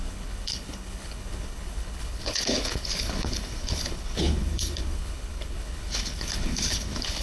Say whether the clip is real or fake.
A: fake